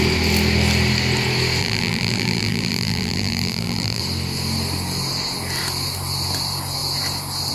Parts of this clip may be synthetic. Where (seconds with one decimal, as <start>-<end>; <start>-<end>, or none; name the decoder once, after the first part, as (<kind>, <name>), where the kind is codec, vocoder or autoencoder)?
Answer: 1.6-4.0 (vocoder, BigVGAN v2)